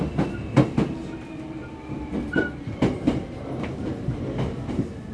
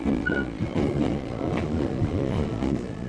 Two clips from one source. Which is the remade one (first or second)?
second